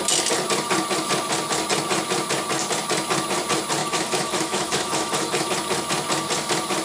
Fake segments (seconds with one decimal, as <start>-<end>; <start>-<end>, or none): 3.8-5.5